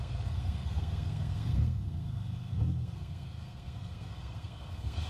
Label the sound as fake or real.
fake